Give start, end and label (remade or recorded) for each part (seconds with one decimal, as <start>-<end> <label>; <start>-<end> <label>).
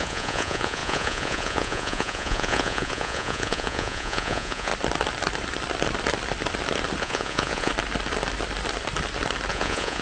0.0-4.7 remade; 4.7-7.0 recorded; 7.0-7.7 remade; 7.7-9.5 recorded; 9.5-10.0 remade